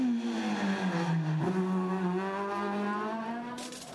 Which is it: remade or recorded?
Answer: recorded